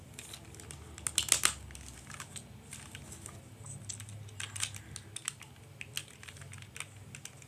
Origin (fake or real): real